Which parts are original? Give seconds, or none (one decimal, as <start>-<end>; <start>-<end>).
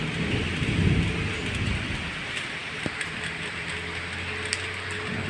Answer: 0.0-5.3